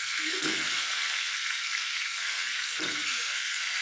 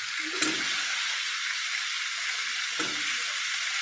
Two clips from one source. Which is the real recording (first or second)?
second